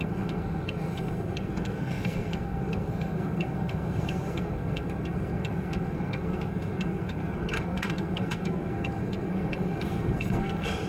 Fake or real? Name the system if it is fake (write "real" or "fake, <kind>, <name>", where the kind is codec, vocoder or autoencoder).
fake, codec, SNAC